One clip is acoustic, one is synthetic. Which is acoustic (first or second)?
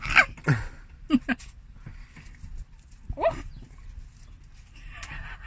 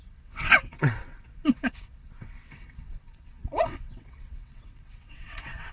first